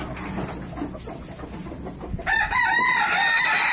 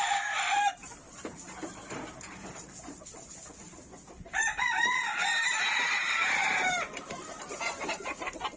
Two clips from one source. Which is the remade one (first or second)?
second